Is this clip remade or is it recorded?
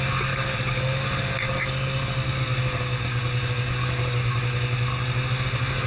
recorded